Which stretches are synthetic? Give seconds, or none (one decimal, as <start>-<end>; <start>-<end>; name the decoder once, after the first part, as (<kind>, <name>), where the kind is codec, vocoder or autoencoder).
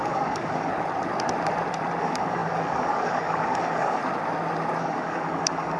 0.0-0.7 (codec, DAC); 2.0-4.0; 4.8-5.8